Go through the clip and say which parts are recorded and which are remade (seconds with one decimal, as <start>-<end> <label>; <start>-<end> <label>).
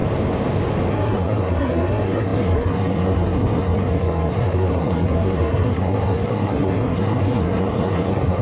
0.0-0.9 recorded; 0.9-8.4 remade